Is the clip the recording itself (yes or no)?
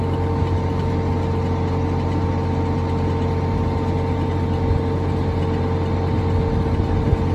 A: yes